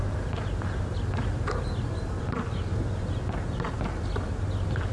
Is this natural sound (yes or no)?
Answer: yes